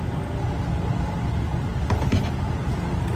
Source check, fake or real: real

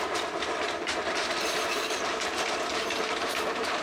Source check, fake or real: fake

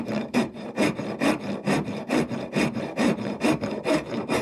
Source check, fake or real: fake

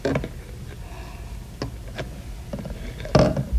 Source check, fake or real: real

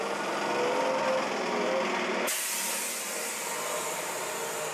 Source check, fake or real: real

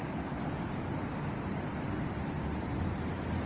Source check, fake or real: real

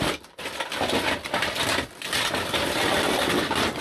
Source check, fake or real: real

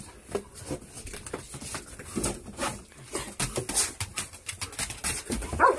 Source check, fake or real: real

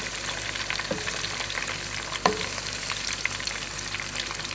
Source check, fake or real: fake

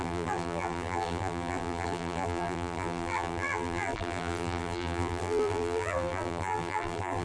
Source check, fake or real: fake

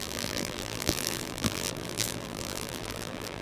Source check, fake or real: fake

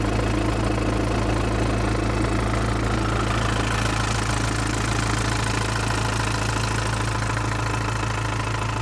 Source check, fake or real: real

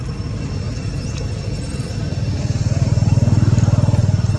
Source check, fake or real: real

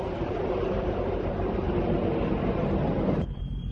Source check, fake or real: fake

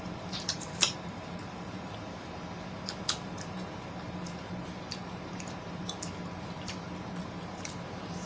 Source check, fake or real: fake